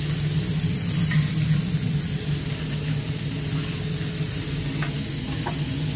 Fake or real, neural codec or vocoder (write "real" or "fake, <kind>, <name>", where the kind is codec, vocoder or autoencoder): real